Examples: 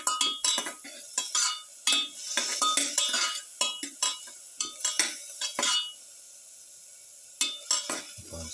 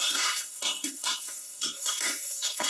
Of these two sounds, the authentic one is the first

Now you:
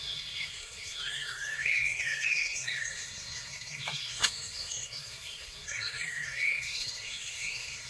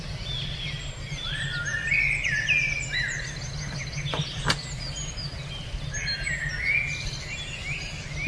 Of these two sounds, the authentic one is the second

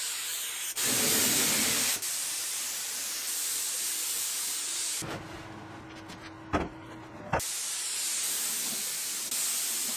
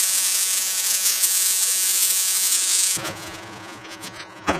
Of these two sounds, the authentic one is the first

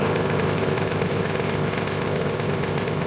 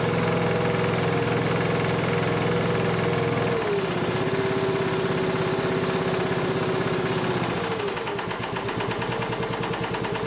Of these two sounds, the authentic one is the second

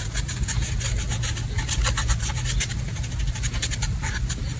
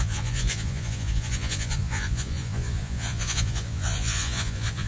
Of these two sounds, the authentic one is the first